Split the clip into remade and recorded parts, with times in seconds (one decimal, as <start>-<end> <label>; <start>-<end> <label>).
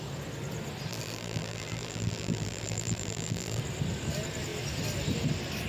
0.0-0.9 recorded; 0.9-3.6 remade; 3.6-5.7 recorded